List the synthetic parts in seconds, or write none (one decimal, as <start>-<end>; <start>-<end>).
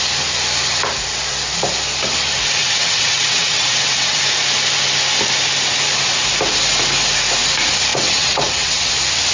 2.6-4.2; 7.9-8.9